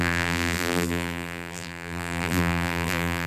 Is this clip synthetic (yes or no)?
yes